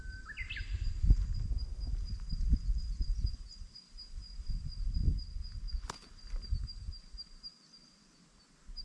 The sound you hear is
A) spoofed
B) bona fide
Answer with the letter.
B